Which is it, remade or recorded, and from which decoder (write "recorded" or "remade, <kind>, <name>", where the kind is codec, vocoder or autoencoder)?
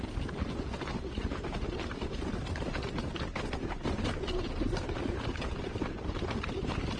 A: remade, vocoder, BigVGAN v2